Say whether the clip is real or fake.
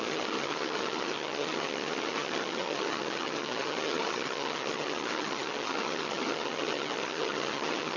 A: fake